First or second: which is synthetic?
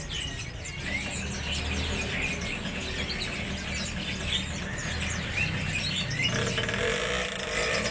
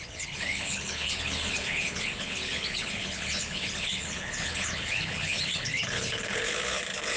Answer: second